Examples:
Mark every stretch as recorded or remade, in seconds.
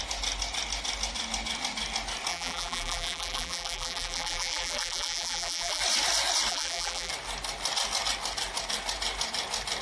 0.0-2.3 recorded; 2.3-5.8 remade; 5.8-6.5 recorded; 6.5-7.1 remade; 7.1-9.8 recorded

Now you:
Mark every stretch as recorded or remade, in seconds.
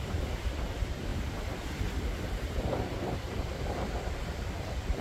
0.0-5.0 remade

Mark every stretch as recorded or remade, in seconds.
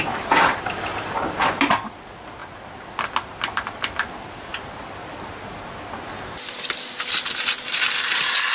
0.0-8.5 recorded